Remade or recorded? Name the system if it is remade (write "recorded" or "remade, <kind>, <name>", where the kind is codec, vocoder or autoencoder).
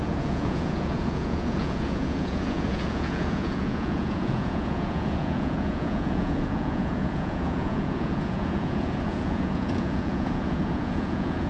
remade, vocoder, Vocos